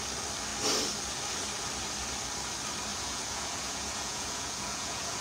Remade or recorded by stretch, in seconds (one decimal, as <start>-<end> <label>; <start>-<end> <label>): 0.0-2.9 recorded; 2.9-5.2 remade